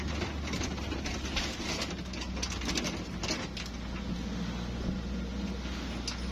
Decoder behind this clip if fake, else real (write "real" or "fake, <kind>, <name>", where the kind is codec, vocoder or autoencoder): real